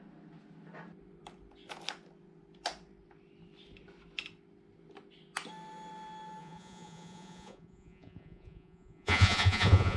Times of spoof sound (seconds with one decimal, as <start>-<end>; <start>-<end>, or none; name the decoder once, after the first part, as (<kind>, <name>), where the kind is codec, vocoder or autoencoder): 6.4-10.0 (vocoder, Vocos)